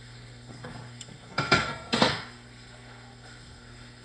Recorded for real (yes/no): no